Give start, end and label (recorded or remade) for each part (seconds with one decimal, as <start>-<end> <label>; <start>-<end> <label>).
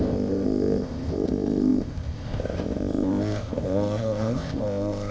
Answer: 0.0-5.1 remade